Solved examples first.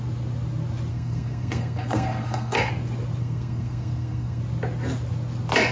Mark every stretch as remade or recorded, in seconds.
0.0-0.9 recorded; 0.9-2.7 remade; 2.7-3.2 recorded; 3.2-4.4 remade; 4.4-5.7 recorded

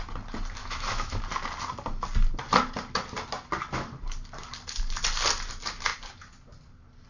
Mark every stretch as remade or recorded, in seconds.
0.0-0.6 recorded; 0.6-1.2 remade; 1.2-7.1 recorded

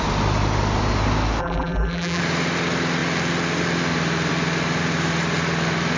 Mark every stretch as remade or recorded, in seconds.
0.0-1.4 recorded; 1.4-2.2 remade; 2.2-6.0 recorded

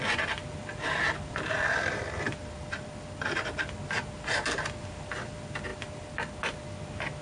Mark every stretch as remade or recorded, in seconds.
0.0-7.2 recorded

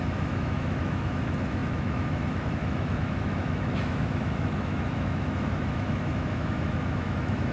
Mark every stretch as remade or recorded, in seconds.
0.0-7.5 remade